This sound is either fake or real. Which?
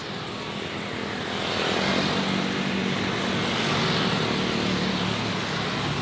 real